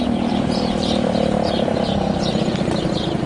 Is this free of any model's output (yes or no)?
no